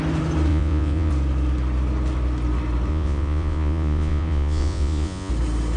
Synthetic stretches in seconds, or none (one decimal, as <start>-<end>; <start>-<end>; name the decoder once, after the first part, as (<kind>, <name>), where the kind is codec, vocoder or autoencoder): 0.5-1.1 (vocoder, Vocos); 2.9-5.3